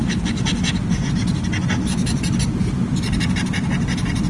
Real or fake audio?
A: real